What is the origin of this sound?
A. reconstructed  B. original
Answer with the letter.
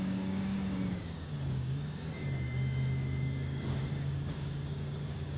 A